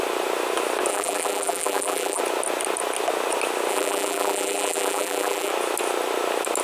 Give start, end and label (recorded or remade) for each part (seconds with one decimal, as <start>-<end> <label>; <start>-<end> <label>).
0.0-0.9 recorded; 0.9-2.2 remade; 2.2-3.7 recorded; 3.7-5.5 remade; 5.5-6.6 recorded